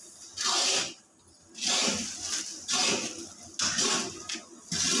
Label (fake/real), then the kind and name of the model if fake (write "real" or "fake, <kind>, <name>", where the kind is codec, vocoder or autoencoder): real